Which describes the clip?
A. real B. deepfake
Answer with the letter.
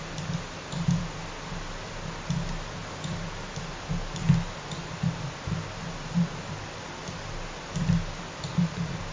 A